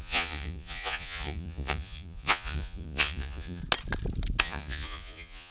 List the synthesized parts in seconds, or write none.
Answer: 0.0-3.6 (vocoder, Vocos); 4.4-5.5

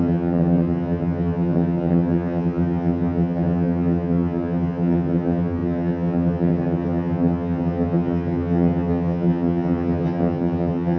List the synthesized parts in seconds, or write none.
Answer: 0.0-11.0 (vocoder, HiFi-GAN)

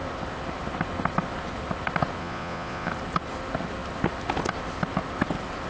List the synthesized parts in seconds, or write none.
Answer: 2.2-2.9 (vocoder, Vocos)

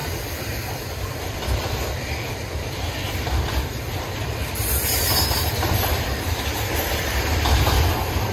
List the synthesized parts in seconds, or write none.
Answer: 0.0-8.3 (vocoder, BigVGAN v2)

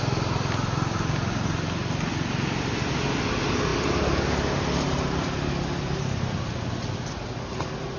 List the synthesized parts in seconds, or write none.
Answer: none